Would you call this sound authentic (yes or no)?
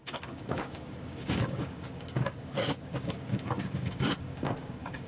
no